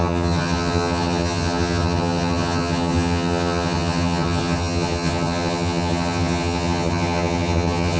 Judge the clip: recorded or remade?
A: remade